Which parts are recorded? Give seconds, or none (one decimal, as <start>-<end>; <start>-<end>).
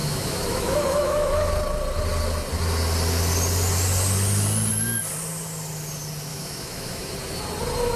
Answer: 1.5-6.3; 7.1-8.0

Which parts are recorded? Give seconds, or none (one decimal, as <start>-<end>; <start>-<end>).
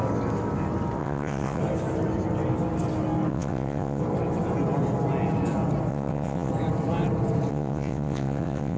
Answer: 0.0-1.0; 1.6-3.3; 4.0-5.9; 6.5-7.5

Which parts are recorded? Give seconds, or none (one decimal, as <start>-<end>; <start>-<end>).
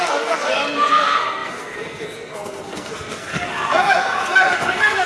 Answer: none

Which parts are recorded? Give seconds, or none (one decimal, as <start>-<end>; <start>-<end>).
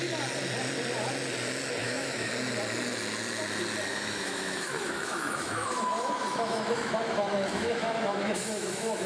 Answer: 0.0-1.8; 2.3-3.9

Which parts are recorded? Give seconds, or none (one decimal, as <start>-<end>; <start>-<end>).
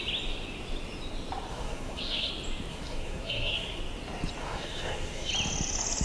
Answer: 0.0-1.5; 2.3-2.7; 3.8-4.4; 5.3-6.0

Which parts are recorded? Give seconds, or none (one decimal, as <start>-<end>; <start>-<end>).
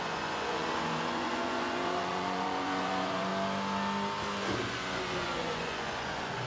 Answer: 3.3-4.7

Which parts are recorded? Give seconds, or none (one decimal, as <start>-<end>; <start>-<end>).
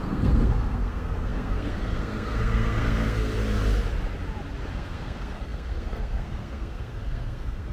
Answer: 3.3-4.7